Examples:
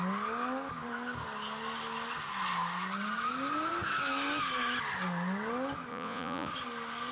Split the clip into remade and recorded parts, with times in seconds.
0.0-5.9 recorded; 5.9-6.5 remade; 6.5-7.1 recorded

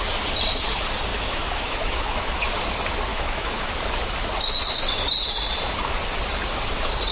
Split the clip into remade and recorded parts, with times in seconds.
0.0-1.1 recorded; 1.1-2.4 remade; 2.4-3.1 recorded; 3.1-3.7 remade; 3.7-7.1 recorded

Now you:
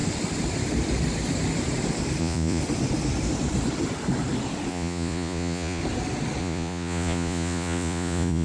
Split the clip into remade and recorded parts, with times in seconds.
0.0-2.2 recorded; 2.2-2.6 remade; 2.6-4.7 recorded; 4.7-5.8 remade; 5.8-6.4 recorded; 6.4-8.4 remade

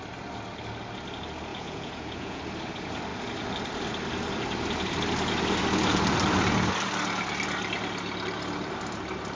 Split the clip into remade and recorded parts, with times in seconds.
0.0-1.5 recorded; 1.5-2.4 remade; 2.4-9.3 recorded

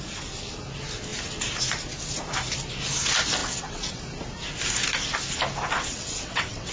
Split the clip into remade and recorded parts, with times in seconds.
0.0-3.4 recorded; 3.4-4.0 remade; 4.0-5.9 recorded; 5.9-6.7 remade